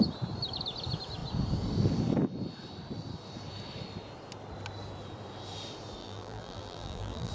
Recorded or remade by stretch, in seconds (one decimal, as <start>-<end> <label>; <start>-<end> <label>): 0.0-6.0 recorded; 6.0-7.3 remade